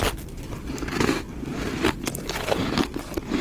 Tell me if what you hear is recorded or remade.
remade